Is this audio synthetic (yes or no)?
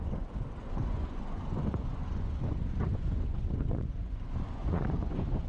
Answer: yes